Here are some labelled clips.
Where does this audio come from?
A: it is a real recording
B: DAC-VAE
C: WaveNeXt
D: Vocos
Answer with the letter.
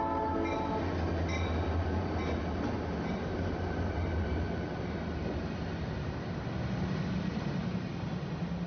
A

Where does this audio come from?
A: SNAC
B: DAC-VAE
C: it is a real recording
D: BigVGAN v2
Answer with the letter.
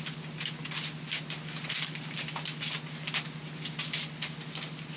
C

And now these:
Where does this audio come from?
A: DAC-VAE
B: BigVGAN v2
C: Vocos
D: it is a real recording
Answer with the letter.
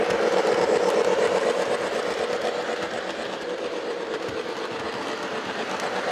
D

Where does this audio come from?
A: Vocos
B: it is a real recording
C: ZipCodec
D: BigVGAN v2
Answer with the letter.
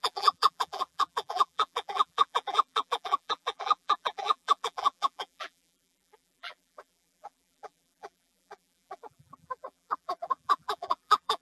D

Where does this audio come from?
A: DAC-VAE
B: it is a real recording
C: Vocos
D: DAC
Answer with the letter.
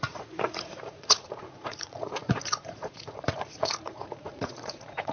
C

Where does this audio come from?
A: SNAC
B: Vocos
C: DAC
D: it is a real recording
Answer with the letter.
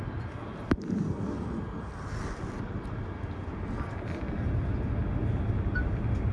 D